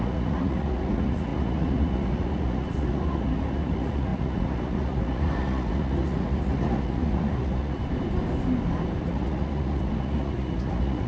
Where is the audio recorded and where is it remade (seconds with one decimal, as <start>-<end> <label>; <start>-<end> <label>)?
0.0-7.8 remade; 7.8-9.0 recorded; 9.0-11.1 remade